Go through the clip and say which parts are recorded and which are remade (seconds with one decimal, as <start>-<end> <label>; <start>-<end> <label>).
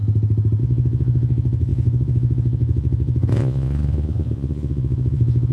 0.0-0.6 recorded; 0.6-5.5 remade